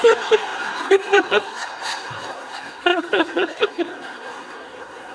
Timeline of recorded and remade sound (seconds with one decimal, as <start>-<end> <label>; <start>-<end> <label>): 0.0-5.1 remade